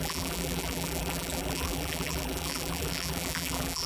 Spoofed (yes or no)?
yes